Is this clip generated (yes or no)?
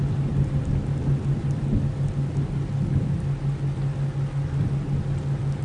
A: no